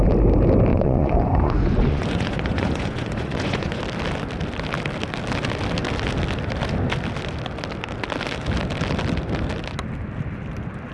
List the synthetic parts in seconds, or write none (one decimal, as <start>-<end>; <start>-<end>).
0.7-3.8